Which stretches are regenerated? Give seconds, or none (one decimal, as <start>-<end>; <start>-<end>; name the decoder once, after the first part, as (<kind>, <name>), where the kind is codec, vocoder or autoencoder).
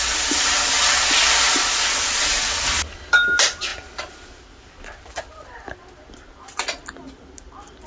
none